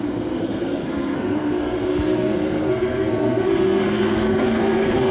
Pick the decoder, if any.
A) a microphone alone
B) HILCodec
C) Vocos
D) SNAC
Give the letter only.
D